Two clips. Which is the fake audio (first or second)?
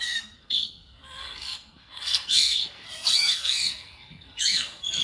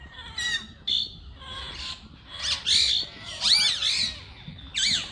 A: first